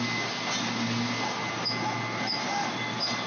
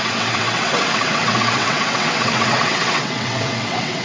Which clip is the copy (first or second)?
second